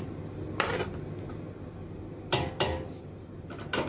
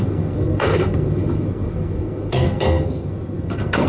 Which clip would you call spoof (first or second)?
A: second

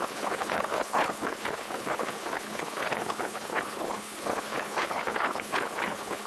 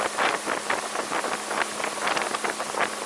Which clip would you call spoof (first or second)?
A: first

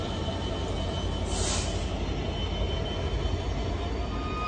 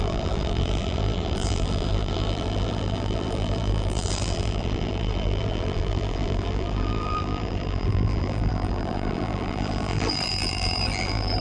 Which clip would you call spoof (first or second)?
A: second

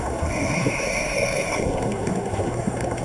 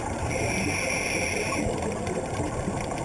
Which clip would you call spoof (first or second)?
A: first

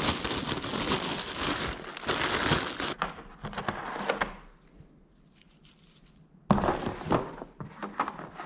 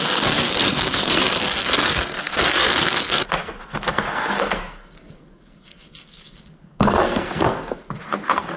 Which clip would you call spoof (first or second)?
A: second